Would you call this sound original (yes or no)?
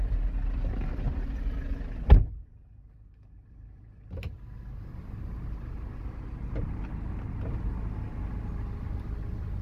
yes